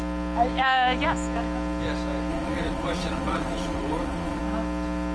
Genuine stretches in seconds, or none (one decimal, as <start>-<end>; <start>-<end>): 0.0-2.3; 4.4-5.1